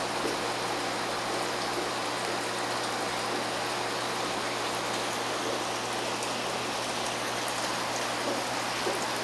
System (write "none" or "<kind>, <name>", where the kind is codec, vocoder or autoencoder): none